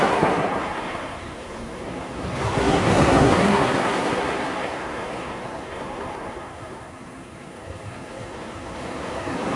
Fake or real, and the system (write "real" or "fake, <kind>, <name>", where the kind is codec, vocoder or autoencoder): fake, codec, SNAC